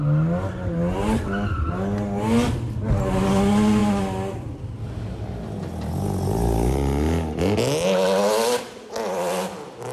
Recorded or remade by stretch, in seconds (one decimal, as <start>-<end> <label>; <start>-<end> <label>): 0.0-9.9 recorded